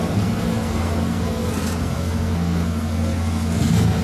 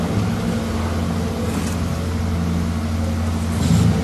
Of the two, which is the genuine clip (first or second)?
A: second